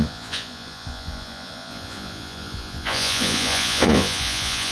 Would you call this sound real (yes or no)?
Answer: no